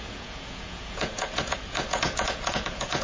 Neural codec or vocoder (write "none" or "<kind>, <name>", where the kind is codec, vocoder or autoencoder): vocoder, Vocos